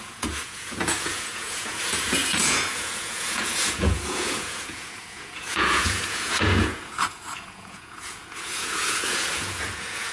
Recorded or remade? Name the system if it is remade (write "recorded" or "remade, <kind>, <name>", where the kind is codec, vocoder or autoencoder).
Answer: remade, vocoder, Vocos